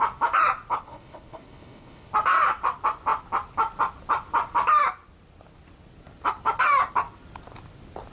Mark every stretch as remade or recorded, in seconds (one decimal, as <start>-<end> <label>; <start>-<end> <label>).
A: 0.0-0.7 recorded; 0.7-2.1 remade; 2.1-8.1 recorded